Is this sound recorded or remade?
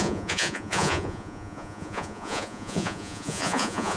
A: remade